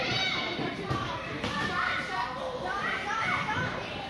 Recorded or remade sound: remade